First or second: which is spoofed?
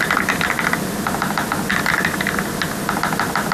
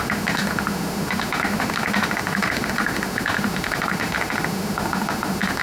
second